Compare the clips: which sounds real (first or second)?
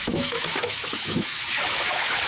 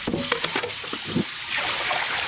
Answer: second